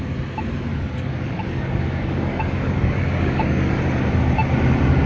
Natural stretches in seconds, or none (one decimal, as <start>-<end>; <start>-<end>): 0.0-0.7; 3.8-5.1

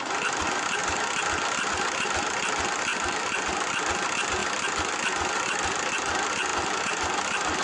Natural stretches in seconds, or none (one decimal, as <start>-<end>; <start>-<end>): 0.0-2.9; 3.5-4.4; 5.0-6.5

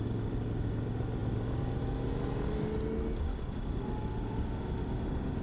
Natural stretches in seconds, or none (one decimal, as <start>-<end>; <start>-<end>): 0.0-5.4

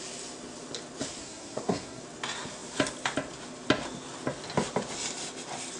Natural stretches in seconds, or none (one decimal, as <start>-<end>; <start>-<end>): 0.0-1.2; 2.0-5.8

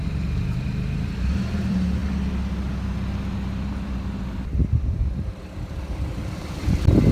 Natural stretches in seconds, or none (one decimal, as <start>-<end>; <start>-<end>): 2.0-5.8

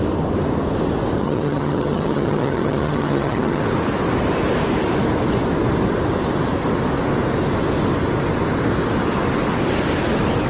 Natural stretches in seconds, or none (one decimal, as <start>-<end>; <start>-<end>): 0.0-1.2; 3.6-10.5